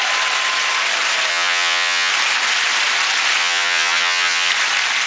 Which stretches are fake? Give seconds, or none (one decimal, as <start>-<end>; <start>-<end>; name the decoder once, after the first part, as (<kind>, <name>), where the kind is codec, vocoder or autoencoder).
1.3-2.1 (vocoder, HiFi-GAN); 3.4-4.5